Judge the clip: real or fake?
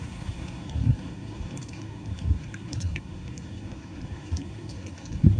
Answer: fake